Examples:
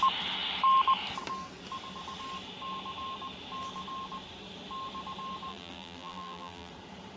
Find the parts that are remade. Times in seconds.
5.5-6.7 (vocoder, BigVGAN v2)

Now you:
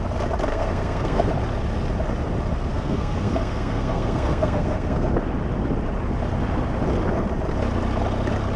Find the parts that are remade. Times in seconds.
0.5-1.3 (codec, SNAC); 2.7-5.1

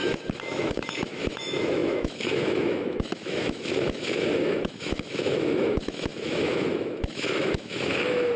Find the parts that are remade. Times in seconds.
0.0-8.4 (autoencoder, DAC-VAE)

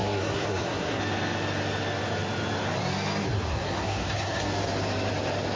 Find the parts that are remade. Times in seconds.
0.0-1.0 (codec, SNAC); 3.5-4.4

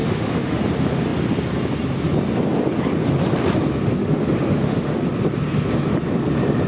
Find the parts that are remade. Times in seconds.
0.0-0.6 (autoencoder, DAC-VAE); 4.0-4.9

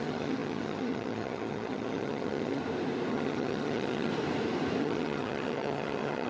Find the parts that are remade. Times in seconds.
0.0-2.6 (vocoder, HiFi-GAN); 3.1-4.1; 4.8-6.3

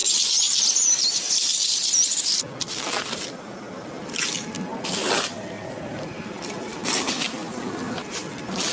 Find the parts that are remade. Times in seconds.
0.0-8.7 (vocoder, BigVGAN v2)

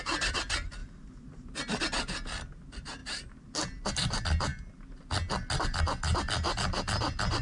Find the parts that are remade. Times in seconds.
none